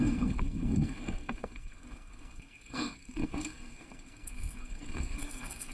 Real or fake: fake